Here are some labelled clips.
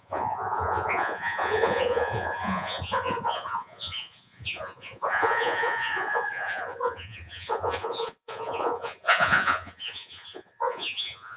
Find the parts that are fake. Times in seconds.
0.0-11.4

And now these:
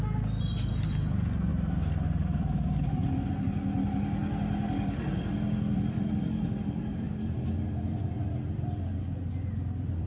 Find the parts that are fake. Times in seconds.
1.5-3.3

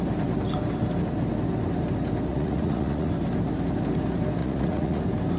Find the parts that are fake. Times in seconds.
2.3-3.1; 4.4-5.0

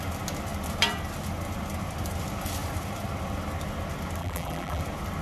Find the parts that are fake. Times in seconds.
4.2-4.8

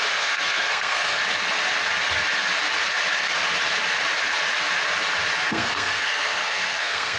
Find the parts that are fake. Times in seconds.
0.0-1.2; 5.5-7.2

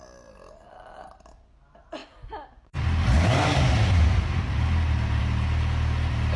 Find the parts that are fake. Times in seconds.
none